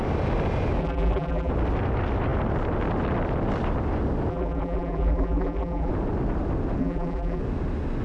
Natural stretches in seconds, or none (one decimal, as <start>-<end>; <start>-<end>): 0.0-0.8; 1.5-4.3; 5.9-6.8; 7.4-8.0